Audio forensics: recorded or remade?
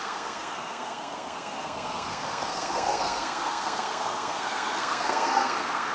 remade